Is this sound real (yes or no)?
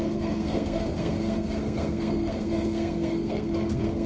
no